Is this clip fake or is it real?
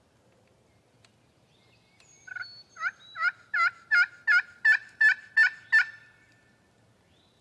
real